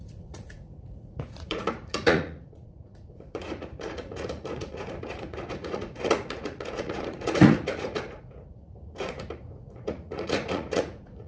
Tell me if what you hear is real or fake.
fake